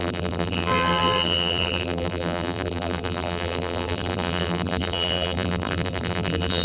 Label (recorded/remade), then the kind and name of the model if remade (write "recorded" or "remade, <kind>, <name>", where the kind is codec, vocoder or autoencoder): remade, vocoder, BigVGAN v2